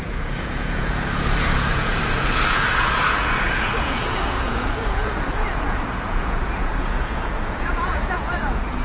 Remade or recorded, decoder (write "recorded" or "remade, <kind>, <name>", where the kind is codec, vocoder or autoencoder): remade, vocoder, Vocos